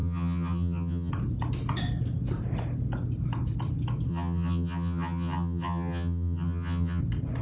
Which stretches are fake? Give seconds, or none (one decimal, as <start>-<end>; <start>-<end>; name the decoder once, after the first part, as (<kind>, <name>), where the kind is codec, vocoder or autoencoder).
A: 0.0-1.1 (vocoder, HiFi-GAN); 4.1-7.0